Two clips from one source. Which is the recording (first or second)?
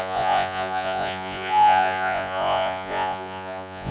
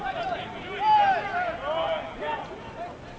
second